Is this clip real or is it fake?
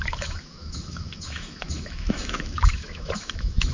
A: fake